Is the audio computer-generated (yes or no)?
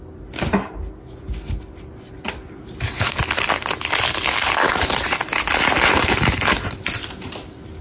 no